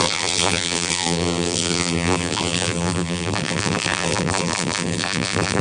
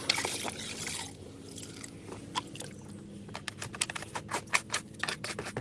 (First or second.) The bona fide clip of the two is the second